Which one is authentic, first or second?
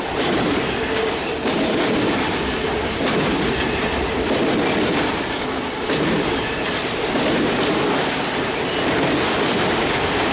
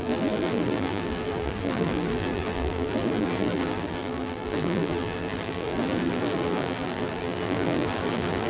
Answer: first